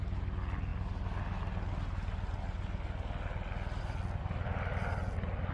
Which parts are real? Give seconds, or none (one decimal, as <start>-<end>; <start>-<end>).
0.0-5.5